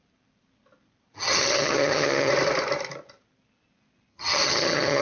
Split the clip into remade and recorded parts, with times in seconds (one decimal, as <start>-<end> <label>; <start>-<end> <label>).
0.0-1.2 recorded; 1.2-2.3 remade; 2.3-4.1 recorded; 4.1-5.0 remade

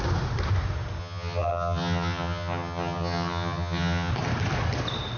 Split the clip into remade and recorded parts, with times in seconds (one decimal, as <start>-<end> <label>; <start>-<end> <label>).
0.0-1.0 recorded; 1.0-4.1 remade; 4.1-5.2 recorded

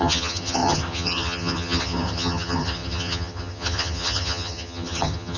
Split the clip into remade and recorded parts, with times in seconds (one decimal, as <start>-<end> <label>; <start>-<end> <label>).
0.0-5.4 remade

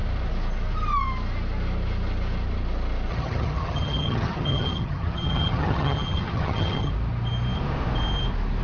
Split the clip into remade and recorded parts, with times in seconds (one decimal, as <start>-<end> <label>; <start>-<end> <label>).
0.0-3.1 recorded; 3.1-6.9 remade; 6.9-8.6 recorded

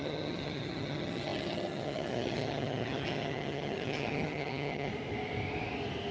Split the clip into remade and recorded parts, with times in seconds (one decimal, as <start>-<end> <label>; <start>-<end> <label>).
0.0-4.9 remade; 4.9-6.1 recorded